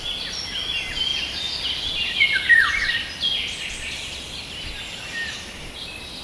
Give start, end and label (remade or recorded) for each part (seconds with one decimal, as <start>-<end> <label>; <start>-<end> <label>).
0.0-6.2 recorded